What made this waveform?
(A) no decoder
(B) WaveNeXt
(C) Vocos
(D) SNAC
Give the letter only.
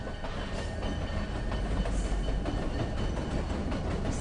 A